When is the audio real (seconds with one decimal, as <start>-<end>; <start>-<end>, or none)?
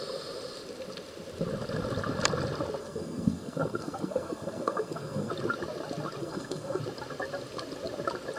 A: 0.0-2.8; 5.3-6.2; 6.8-8.4